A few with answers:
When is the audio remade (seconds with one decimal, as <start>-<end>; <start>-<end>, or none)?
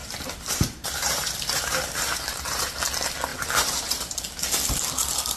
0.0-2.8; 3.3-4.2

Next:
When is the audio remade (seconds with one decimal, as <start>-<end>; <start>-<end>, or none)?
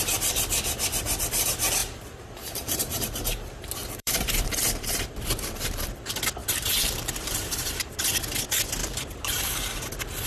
1.8-5.9; 6.4-8.0; 8.8-9.5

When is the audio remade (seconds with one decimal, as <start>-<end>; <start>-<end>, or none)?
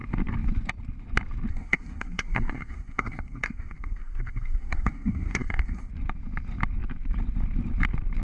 1.5-5.9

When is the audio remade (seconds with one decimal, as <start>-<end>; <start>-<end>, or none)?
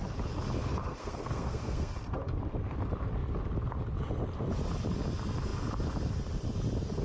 0.8-1.9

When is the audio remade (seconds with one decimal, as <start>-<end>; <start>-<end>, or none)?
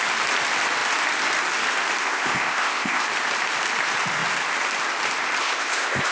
2.0-3.1; 5.4-6.1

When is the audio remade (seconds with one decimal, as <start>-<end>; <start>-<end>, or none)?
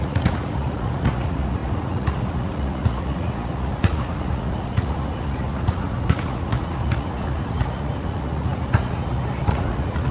0.0-10.1